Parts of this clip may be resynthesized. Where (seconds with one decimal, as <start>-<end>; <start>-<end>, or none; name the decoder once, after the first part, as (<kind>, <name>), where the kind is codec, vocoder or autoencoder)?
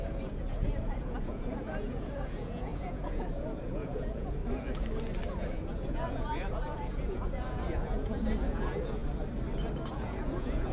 0.0-4.4 (vocoder, Vocos); 5.3-9.0; 9.9-10.7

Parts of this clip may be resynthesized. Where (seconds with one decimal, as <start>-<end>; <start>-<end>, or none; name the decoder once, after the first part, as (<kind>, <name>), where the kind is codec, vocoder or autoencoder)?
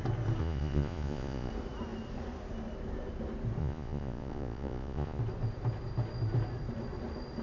0.4-1.5 (vocoder, Vocos); 3.6-5.2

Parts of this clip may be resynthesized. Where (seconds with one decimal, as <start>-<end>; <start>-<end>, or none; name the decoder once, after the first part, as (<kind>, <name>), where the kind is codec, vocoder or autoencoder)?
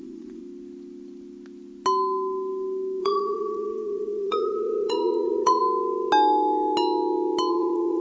0.0-0.4 (vocoder, Vocos); 3.0-5.6; 7.5-8.0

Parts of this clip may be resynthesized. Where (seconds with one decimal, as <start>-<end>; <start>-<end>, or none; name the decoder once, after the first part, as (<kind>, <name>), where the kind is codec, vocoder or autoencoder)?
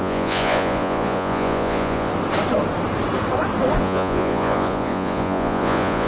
0.0-2.1 (vocoder, Vocos); 3.8-6.1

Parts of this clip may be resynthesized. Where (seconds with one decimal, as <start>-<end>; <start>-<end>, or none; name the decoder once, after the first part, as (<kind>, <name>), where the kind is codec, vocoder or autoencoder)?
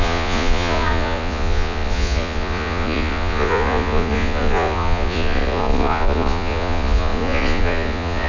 0.0-8.3 (vocoder, Vocos)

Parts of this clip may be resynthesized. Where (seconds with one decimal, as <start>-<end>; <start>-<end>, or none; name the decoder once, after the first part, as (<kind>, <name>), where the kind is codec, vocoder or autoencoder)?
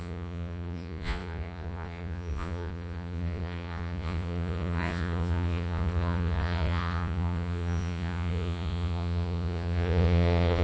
0.0-10.6 (vocoder, Vocos)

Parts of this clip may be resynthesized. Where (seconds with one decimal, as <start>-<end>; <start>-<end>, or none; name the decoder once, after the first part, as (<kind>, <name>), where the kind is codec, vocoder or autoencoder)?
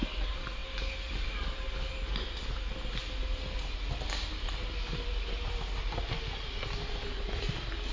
none